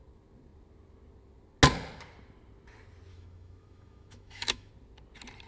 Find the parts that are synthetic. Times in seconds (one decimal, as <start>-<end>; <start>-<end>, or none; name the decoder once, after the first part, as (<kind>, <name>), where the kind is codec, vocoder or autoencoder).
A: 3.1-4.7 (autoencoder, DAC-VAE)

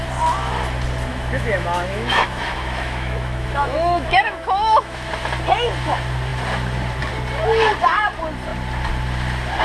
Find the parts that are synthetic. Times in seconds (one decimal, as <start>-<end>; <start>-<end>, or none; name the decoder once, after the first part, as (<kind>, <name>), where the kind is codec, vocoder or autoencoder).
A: 1.1-5.1 (autoencoder, DAC-VAE)

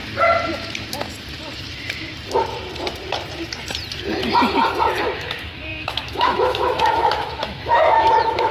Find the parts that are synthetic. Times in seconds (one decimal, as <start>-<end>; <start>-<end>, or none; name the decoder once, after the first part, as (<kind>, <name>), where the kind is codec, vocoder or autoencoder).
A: 5.0-8.5 (autoencoder, DAC-VAE)